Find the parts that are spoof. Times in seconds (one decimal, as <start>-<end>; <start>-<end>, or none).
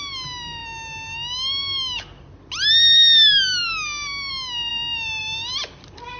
none